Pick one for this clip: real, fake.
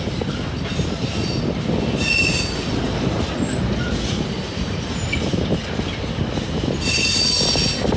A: real